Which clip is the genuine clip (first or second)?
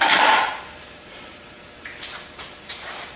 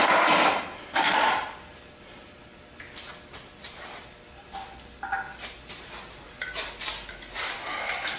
second